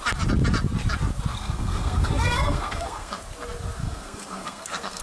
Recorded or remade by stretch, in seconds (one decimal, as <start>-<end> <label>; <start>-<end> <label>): 0.0-1.3 recorded; 1.3-3.2 remade; 3.2-3.8 recorded; 3.8-5.0 remade